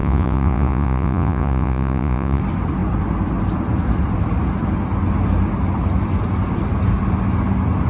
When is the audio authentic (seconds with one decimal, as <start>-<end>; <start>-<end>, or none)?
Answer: 2.4-7.9

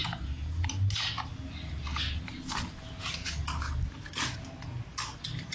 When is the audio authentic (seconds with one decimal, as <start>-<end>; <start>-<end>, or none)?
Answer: 0.0-5.5

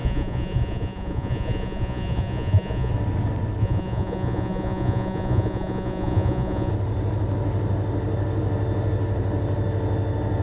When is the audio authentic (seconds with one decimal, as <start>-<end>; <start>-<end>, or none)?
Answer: 2.9-3.6; 6.7-10.4

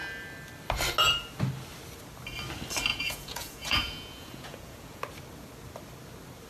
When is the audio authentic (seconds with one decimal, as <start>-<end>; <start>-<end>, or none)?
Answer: 0.0-2.9; 5.0-6.5